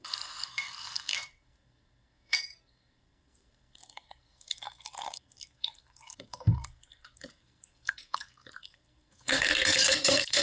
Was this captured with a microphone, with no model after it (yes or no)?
no